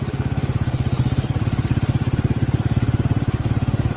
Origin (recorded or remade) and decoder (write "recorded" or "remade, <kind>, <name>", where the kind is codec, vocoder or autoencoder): recorded